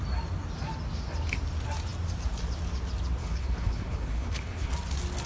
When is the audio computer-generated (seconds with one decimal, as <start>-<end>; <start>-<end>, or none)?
3.2-4.7